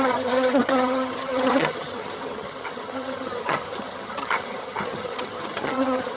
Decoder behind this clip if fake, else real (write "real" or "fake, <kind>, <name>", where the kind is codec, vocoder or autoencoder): fake, vocoder, HiFi-GAN